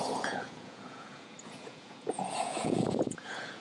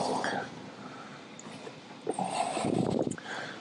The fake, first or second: first